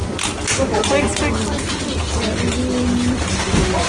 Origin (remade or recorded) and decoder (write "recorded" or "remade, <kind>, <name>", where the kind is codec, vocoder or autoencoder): recorded